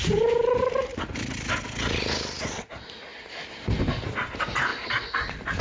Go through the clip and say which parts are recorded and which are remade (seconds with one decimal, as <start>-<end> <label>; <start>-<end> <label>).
0.0-5.6 recorded